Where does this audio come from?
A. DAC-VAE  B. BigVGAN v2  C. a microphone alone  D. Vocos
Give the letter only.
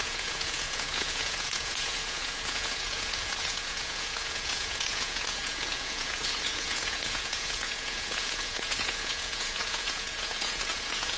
D